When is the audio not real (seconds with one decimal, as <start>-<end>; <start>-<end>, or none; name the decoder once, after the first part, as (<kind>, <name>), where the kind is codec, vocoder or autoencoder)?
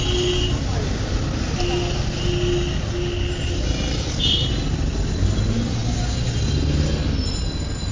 none